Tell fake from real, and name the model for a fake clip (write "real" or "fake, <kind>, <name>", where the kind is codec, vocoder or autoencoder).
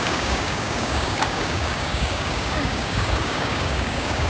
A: fake, codec, DAC